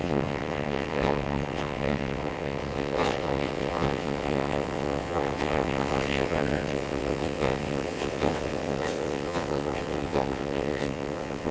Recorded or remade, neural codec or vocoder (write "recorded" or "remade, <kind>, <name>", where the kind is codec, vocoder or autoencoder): remade, vocoder, WaveNeXt